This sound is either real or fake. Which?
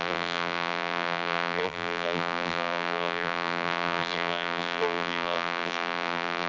fake